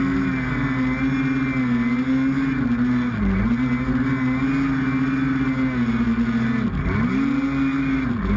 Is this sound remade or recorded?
recorded